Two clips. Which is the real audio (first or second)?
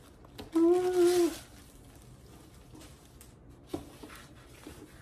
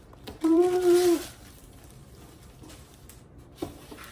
first